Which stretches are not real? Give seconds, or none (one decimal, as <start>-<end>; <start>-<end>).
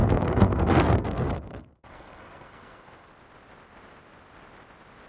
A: 0.0-3.1